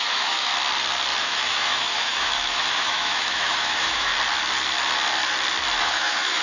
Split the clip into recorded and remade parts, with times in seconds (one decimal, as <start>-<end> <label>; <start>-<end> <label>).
0.0-0.5 remade; 0.5-1.2 recorded; 1.2-4.1 remade; 4.1-5.8 recorded; 5.8-6.4 remade